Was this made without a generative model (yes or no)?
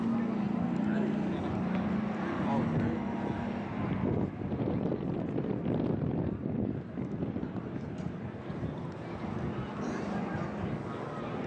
yes